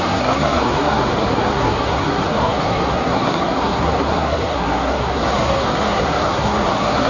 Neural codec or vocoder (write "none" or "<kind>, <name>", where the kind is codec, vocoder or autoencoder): codec, SNAC